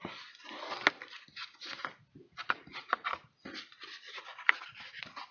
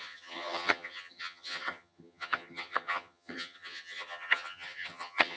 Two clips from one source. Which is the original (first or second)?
first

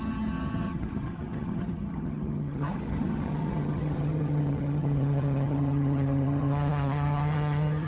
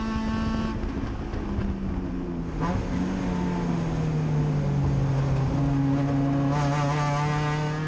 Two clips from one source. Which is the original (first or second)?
second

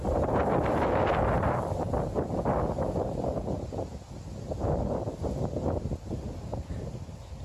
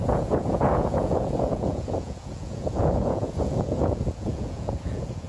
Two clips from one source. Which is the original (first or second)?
first